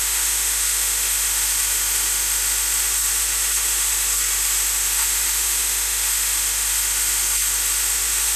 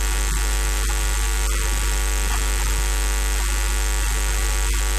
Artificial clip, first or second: first